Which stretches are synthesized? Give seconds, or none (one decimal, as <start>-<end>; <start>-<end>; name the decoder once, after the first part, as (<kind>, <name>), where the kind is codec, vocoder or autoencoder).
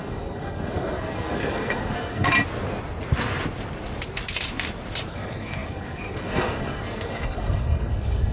0.0-2.3 (codec, SNAC); 5.1-8.3